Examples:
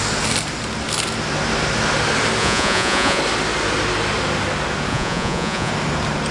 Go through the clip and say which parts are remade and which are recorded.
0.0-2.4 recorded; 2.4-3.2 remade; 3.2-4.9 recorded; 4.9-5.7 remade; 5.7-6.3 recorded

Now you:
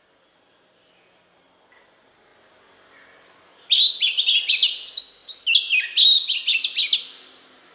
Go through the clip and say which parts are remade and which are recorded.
0.0-7.7 recorded

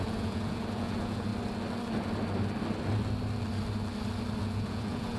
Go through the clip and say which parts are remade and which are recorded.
0.0-1.3 remade; 1.3-4.4 recorded; 4.4-5.2 remade

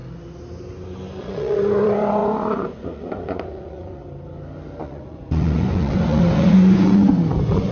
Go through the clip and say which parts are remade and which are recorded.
0.0-1.2 recorded; 1.2-4.0 remade; 4.0-4.8 recorded; 4.8-7.7 remade

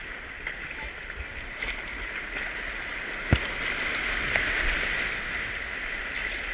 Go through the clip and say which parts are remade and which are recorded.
0.0-6.5 recorded

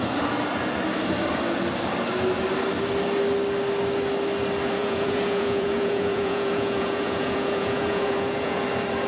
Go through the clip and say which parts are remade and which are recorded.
0.0-4.8 recorded; 4.8-8.6 remade; 8.6-9.1 recorded